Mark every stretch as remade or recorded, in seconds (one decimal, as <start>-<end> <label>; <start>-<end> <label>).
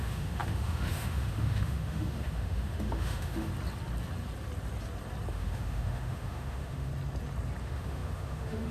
0.0-3.5 remade; 3.5-5.3 recorded; 5.3-6.9 remade; 6.9-7.6 recorded; 7.6-8.7 remade